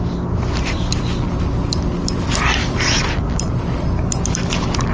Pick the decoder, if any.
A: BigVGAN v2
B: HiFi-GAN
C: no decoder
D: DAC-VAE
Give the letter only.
C